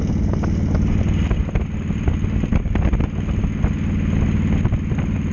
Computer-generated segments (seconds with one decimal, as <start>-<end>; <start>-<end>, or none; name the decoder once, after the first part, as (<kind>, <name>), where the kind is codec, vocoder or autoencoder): none